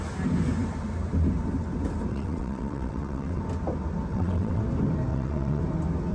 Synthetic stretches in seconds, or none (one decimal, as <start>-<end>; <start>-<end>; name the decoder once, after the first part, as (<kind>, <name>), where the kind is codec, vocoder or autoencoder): 2.1-3.4 (vocoder, WaveNeXt); 4.1-4.6; 5.1-5.6